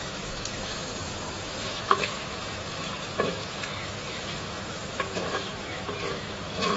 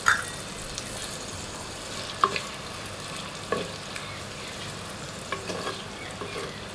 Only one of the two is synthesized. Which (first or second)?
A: first